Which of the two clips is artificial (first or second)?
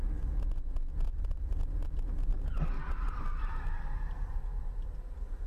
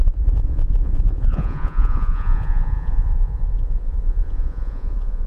second